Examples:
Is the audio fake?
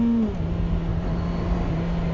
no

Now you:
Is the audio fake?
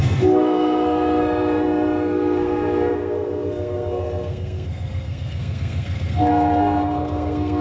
yes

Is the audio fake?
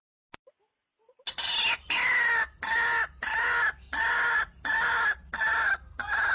no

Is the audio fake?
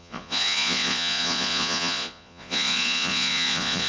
yes